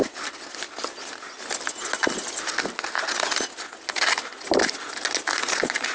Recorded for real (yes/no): yes